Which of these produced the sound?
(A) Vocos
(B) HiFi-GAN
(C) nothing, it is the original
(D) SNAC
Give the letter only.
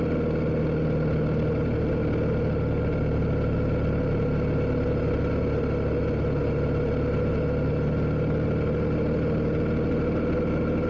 C